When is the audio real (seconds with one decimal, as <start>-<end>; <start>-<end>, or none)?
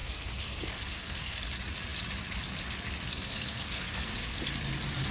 1.4-3.1; 4.1-5.1